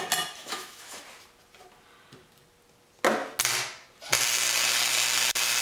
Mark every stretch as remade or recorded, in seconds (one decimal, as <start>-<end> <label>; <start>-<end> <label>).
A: 0.0-0.4 recorded; 0.4-1.0 remade; 1.0-5.6 recorded